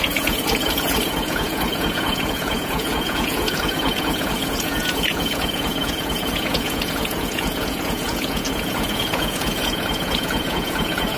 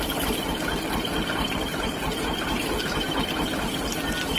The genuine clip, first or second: second